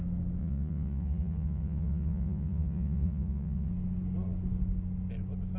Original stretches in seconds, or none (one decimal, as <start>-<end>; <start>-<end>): 0.0-0.4; 3.7-5.6

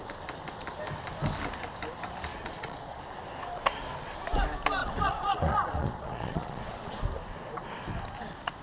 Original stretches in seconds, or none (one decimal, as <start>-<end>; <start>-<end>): 0.0-2.3; 3.0-4.8; 7.0-8.6

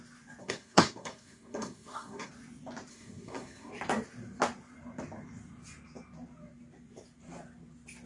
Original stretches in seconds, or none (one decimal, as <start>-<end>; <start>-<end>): 0.0-0.4; 2.3-2.9; 3.7-8.1